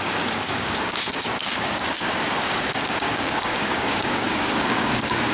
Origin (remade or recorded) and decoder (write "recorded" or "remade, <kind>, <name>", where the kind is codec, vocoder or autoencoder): remade, codec, DAC